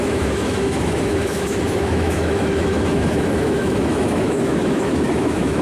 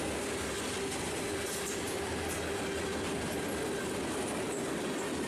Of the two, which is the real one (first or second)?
second